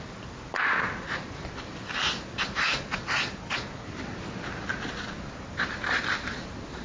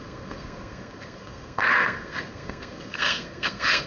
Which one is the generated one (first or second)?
second